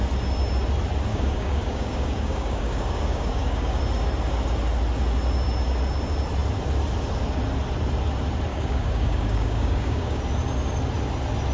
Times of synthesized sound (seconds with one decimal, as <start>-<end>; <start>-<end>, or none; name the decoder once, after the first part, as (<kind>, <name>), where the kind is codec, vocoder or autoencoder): 1.1-3.8 (codec, DAC); 8.5-10.2